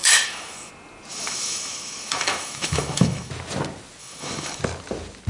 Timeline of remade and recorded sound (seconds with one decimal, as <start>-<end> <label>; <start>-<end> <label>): 0.0-0.7 remade; 0.7-1.1 recorded; 1.1-3.3 remade; 3.3-4.0 recorded; 4.0-4.6 remade; 4.6-5.3 recorded